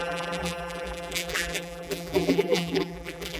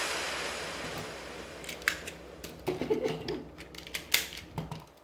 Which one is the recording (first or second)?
second